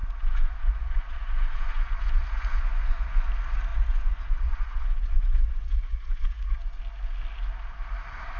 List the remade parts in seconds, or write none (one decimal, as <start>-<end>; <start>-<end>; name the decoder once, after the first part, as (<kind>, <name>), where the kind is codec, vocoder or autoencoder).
0.0-3.2 (vocoder, Vocos); 3.7-6.8

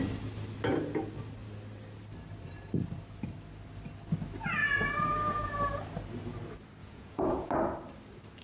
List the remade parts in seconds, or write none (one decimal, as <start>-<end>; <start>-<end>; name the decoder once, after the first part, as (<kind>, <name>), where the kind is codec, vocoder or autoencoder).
4.6-5.5 (vocoder, Vocos); 6.8-7.5

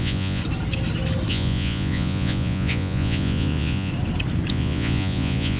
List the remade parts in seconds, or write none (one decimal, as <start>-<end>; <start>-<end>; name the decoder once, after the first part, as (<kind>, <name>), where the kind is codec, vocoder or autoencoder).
0.0-0.4 (vocoder, Vocos); 1.3-3.9; 4.5-5.6

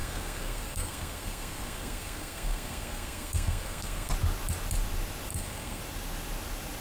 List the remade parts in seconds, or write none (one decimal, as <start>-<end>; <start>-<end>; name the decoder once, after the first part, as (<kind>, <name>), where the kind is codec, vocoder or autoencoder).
0.0-4.1 (codec, SNAC); 5.3-5.8

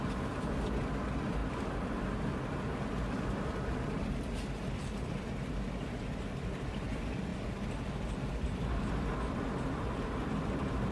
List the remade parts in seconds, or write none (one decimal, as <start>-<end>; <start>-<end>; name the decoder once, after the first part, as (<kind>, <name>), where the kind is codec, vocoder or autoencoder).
none

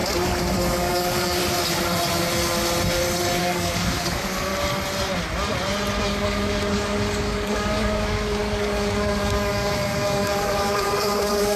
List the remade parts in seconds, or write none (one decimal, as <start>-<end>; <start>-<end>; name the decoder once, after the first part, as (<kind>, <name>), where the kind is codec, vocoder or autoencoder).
0.8-1.4 (codec, DAC); 3.4-4.5; 6.0-11.6

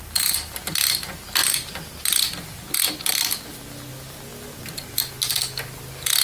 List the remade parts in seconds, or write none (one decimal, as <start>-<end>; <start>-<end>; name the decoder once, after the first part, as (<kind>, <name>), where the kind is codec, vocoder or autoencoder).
none

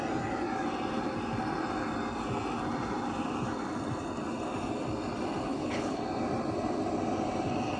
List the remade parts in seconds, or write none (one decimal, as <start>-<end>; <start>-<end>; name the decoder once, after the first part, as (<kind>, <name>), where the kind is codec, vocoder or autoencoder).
5.5-6.0 (codec, HILCodec)